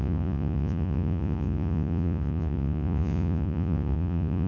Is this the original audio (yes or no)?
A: no